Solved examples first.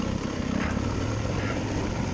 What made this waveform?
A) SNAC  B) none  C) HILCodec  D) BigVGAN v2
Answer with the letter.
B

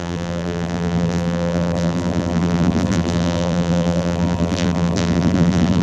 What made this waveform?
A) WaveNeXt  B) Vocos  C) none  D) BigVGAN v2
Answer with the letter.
D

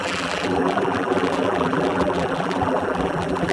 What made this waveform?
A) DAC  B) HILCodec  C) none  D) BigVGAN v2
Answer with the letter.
D